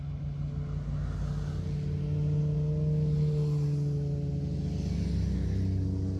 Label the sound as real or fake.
real